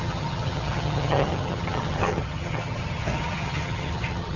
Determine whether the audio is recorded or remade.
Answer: remade